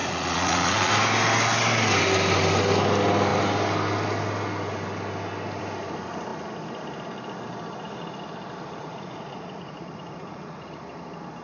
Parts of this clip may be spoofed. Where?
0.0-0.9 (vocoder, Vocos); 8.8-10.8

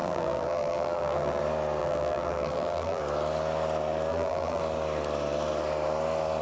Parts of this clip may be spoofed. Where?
0.0-1.4 (vocoder, BigVGAN v2); 1.8-3.0; 4.1-4.6